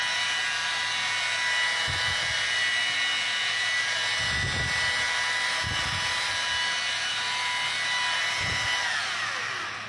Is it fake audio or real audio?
real